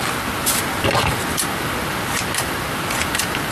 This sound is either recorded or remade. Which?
recorded